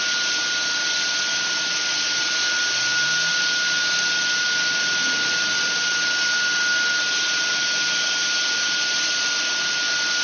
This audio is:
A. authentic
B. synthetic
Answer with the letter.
A